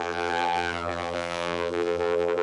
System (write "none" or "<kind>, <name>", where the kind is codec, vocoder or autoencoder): vocoder, BigVGAN v2